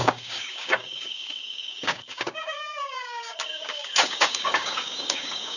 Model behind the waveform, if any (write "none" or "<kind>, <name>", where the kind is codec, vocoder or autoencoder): codec, DAC